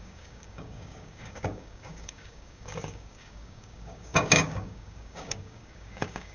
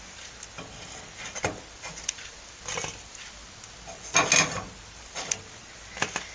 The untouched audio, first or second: second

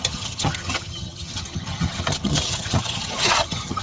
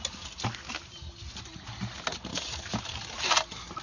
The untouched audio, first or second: second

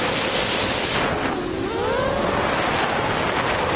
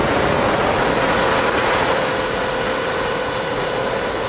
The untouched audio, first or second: first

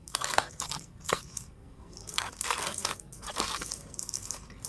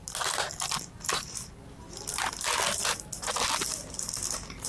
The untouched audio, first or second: second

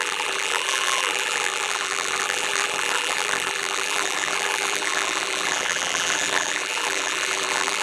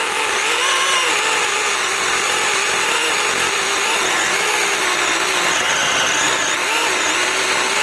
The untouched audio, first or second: second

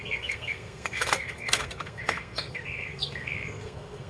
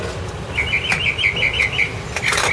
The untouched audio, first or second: second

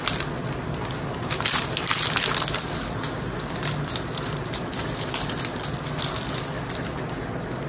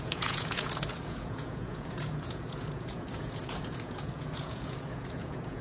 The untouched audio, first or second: first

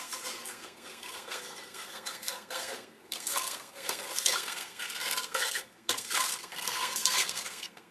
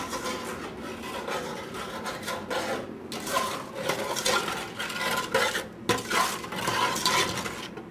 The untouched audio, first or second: second